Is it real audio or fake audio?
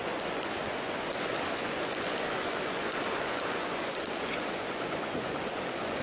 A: fake